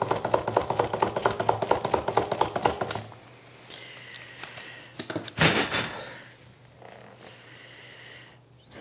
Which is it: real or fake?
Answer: real